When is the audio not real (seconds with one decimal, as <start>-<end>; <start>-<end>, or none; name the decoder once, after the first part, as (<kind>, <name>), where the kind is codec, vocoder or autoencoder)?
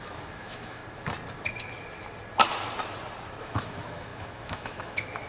0.0-0.8 (autoencoder, DAC-VAE); 3.4-5.3